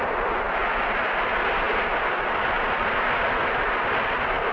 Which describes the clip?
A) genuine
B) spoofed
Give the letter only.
A